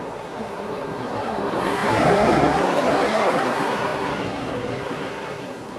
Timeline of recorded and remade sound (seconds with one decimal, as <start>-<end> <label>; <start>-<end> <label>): 0.0-5.8 remade